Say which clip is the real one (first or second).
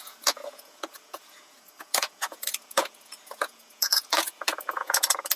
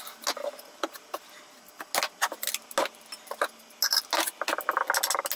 second